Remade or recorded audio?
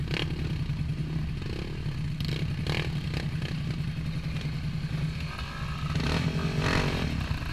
recorded